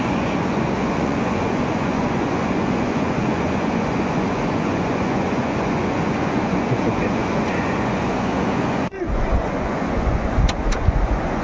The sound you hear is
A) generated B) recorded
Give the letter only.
A